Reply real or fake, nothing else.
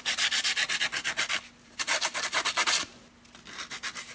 real